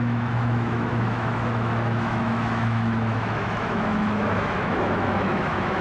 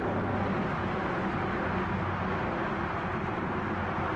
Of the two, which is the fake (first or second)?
first